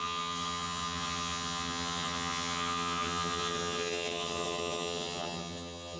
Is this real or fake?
fake